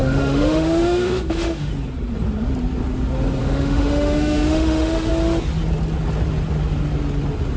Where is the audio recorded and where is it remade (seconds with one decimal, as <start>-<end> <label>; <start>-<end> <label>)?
0.0-1.7 remade; 1.7-3.4 recorded; 3.4-5.1 remade; 5.1-7.6 recorded

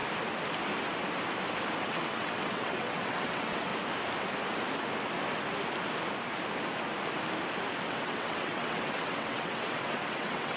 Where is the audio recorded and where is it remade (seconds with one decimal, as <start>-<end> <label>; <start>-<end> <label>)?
0.0-1.8 recorded; 1.8-3.7 remade; 3.7-7.9 recorded; 7.9-10.6 remade